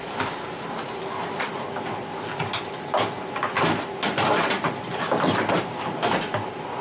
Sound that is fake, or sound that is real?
real